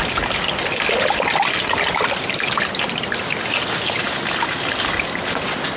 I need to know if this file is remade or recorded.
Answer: recorded